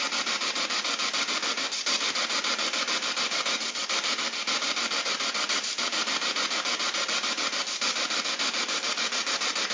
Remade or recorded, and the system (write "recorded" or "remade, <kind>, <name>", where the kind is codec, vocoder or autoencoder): remade, vocoder, BigVGAN v2